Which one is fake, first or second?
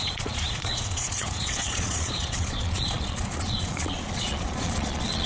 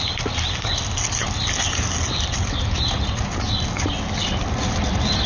first